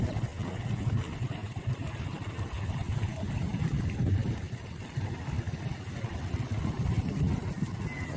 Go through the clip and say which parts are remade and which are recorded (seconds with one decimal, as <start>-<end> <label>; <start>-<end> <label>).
0.0-1.4 recorded; 1.4-1.9 remade; 1.9-3.1 recorded; 3.1-4.6 remade; 4.6-8.2 recorded